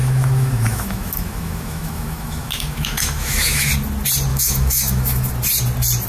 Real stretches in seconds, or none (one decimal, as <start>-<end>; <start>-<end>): 3.7-4.3; 5.3-6.1

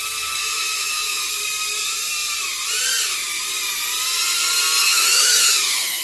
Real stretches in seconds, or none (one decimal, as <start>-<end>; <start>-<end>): 0.0-0.4; 1.4-4.8

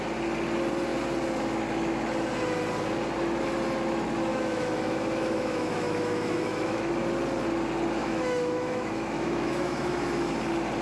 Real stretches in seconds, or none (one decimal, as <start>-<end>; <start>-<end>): 0.0-4.3; 6.9-8.0; 10.3-10.8